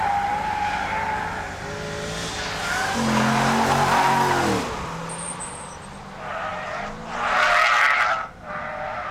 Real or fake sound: real